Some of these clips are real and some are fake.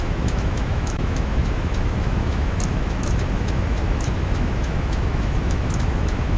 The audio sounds fake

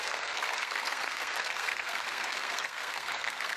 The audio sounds fake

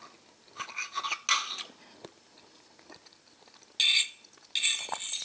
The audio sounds real